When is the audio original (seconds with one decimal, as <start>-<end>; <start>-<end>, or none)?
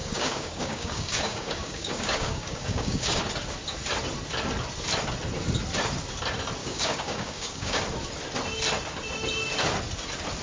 3.2-6.6; 7.8-10.4